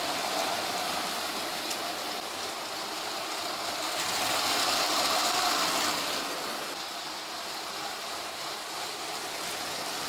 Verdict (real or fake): fake